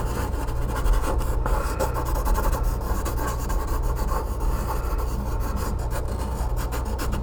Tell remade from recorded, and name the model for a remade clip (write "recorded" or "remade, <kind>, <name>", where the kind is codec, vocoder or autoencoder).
recorded